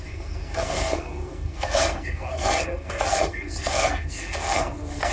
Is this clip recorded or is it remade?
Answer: remade